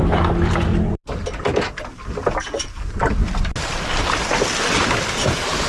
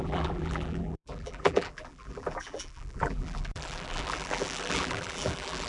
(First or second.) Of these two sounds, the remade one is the second